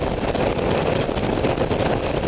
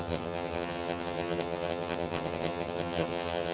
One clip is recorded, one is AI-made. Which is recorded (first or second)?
first